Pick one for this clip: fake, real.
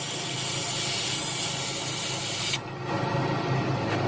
real